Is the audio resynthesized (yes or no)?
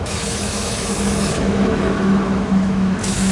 yes